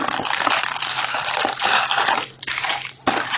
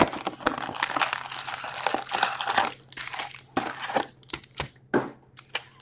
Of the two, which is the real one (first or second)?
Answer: second